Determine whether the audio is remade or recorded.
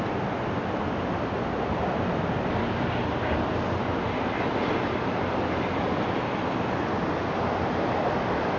recorded